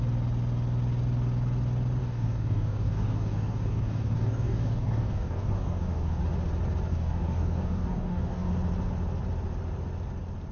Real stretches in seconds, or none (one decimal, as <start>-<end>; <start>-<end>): 0.0-2.0; 6.2-6.9; 8.5-10.5